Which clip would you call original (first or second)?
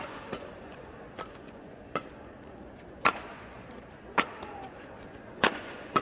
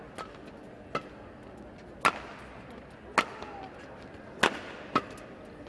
second